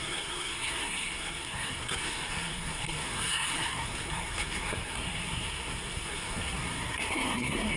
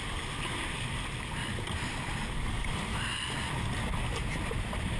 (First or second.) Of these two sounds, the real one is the second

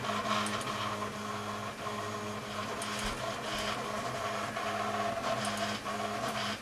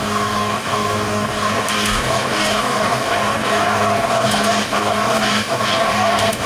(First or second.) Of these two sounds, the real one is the first